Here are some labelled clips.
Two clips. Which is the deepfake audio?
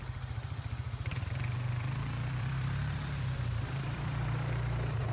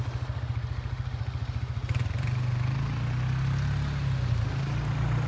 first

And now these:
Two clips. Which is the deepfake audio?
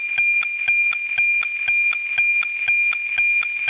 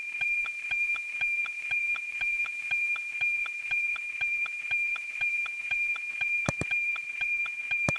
second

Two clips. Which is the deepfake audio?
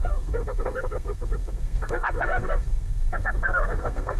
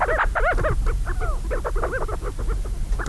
first